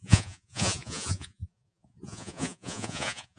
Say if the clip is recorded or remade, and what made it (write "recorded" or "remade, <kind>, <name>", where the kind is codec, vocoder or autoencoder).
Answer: remade, vocoder, Vocos